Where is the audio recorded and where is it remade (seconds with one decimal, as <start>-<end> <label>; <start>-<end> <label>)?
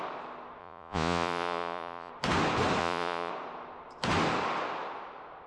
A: 0.0-0.6 recorded; 0.6-2.1 remade; 2.1-2.8 recorded; 2.8-3.3 remade; 3.3-5.5 recorded